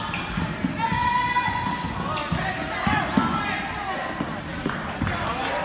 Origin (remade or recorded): recorded